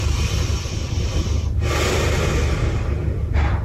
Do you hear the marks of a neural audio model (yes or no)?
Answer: no